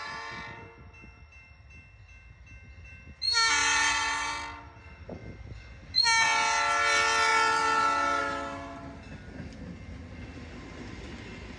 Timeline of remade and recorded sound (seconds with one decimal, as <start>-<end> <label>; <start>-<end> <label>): 0.0-3.6 recorded; 3.6-4.3 remade; 4.3-11.6 recorded